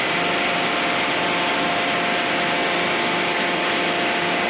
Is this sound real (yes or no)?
yes